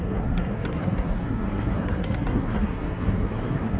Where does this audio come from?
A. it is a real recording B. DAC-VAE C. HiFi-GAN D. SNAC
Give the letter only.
D